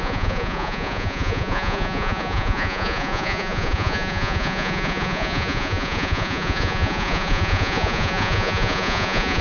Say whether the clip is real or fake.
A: fake